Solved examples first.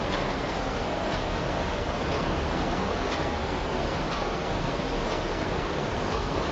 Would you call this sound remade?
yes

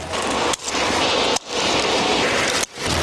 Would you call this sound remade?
no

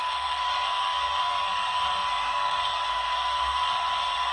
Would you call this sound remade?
yes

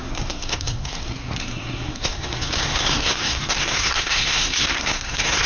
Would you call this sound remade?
yes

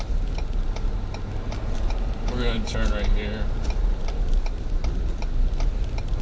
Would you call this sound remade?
no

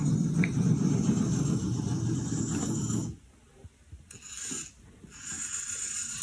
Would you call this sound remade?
no